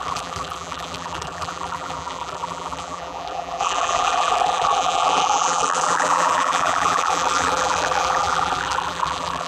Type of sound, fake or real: fake